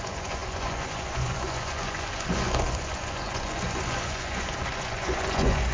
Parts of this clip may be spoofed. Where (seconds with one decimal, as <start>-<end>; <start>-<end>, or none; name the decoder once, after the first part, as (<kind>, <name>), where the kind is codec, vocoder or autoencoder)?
0.0-5.7 (vocoder, Vocos)